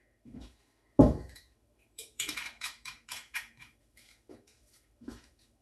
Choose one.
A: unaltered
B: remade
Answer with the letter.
B